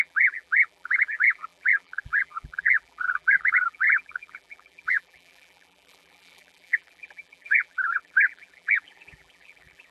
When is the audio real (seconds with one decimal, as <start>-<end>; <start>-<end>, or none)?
none